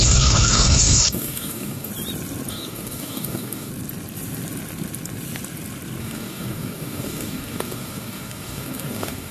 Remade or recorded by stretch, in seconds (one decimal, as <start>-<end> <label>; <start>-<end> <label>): 0.0-1.9 remade; 1.9-2.5 recorded; 2.5-3.7 remade; 3.7-6.0 recorded; 6.0-9.3 remade